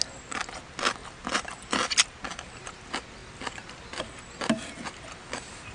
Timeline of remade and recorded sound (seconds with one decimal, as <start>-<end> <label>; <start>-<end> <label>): 0.0-1.0 recorded; 1.0-1.9 remade; 1.9-5.7 recorded

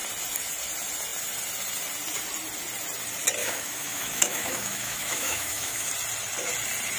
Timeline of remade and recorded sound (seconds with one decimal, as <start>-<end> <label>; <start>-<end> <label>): 0.0-3.4 recorded; 3.4-5.9 remade; 5.9-7.0 recorded